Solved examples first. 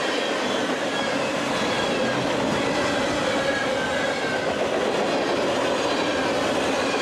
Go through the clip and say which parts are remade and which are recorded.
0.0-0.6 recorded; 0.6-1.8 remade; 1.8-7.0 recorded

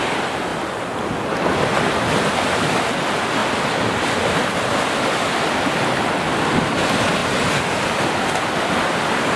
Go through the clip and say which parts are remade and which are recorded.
0.0-0.5 recorded; 0.5-1.6 remade; 1.6-7.2 recorded; 7.2-7.7 remade; 7.7-9.4 recorded

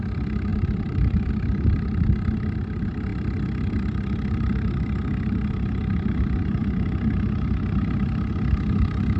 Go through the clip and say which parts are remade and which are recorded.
0.0-0.5 recorded; 0.5-1.3 remade; 1.3-9.2 recorded

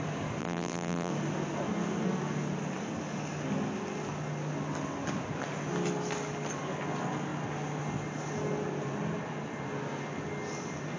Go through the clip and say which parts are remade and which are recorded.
0.0-0.4 recorded; 0.4-1.1 remade; 1.1-11.0 recorded

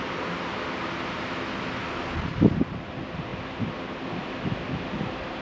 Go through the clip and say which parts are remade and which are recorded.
0.0-5.4 recorded

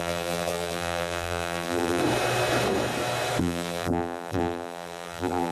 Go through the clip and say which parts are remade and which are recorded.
0.0-2.0 remade; 2.0-3.4 recorded; 3.4-5.5 remade

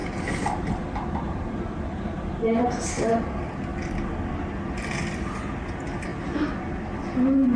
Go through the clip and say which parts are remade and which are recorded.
0.0-3.2 remade; 3.2-7.6 recorded

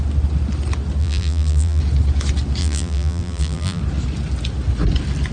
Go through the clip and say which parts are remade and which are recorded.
0.0-1.0 recorded; 1.0-1.8 remade; 1.8-2.6 recorded; 2.6-3.8 remade; 3.8-5.3 recorded